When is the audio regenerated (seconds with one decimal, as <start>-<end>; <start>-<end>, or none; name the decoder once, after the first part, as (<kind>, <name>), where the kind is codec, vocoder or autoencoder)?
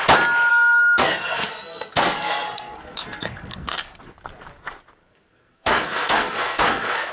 0.5-4.0 (codec, SNAC); 5.0-7.1